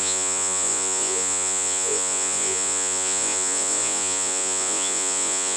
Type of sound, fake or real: fake